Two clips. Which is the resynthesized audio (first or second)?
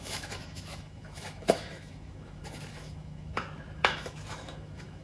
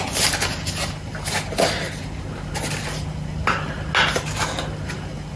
first